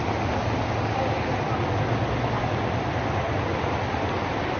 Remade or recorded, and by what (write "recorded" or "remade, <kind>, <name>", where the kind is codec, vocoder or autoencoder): recorded